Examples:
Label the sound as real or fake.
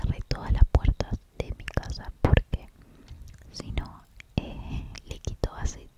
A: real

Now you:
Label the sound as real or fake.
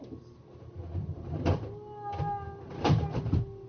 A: real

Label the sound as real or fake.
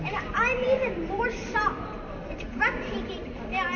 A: fake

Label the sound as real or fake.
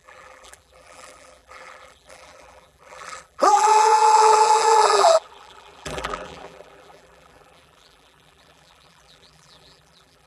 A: fake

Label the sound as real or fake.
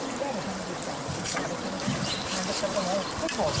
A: fake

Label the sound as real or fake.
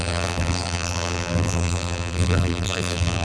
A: fake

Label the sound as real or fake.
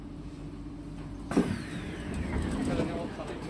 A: fake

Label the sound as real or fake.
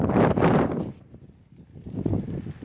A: fake